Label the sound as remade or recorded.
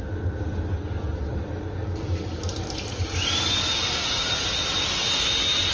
recorded